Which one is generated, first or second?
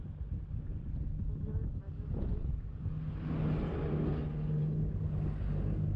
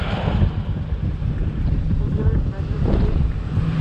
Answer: second